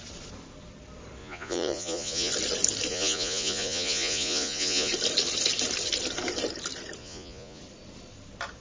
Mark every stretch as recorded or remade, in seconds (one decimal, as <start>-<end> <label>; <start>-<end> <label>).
0.0-1.2 recorded; 1.2-2.3 remade; 2.3-2.9 recorded; 2.9-4.9 remade; 4.9-7.0 recorded; 7.0-7.6 remade; 7.6-8.6 recorded